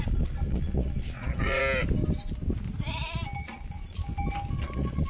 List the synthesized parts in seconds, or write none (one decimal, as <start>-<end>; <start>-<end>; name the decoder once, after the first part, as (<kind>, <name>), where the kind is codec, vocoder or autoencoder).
0.0-1.6 (vocoder, Vocos); 3.4-4.0; 4.6-5.1